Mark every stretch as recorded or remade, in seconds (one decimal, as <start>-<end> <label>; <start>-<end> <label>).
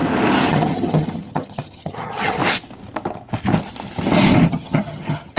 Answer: 0.0-0.5 recorded; 0.5-2.4 remade; 2.4-4.5 recorded; 4.5-5.4 remade